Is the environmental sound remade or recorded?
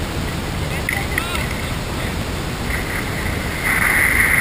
recorded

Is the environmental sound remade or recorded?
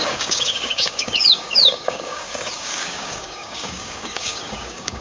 remade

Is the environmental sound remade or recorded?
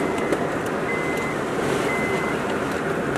recorded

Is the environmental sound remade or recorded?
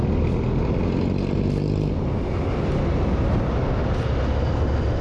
recorded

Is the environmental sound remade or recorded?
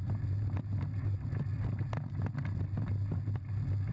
recorded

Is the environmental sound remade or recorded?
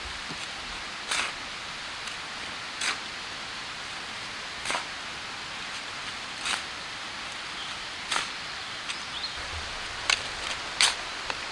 recorded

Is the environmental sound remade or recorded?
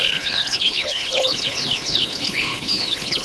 remade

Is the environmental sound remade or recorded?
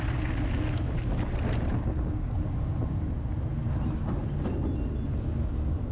recorded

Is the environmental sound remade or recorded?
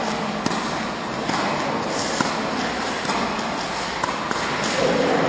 recorded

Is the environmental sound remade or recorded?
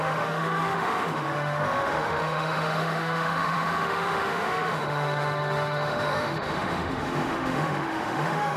remade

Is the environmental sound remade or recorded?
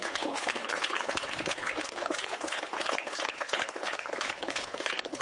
remade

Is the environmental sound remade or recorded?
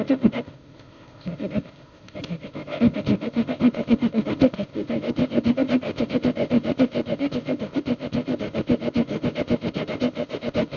remade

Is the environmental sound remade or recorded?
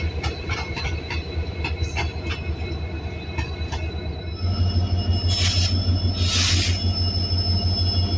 recorded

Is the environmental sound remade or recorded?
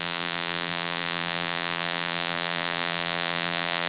remade